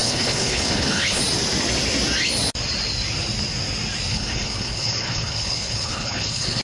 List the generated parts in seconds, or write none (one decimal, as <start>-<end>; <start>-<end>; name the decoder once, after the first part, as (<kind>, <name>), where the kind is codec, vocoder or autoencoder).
0.0-1.2 (codec, HILCodec); 4.1-6.6